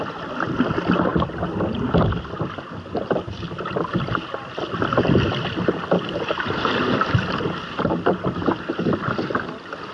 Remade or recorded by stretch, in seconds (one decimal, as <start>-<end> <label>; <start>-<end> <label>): 0.0-9.9 recorded

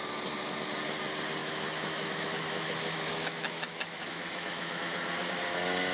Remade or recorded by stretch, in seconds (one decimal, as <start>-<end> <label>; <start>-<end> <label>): 0.0-1.4 recorded; 1.4-4.8 remade; 4.8-5.9 recorded

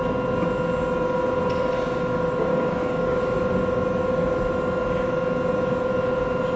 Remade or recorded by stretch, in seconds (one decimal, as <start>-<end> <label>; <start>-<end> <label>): 0.0-2.5 recorded; 2.5-3.2 remade; 3.2-6.6 recorded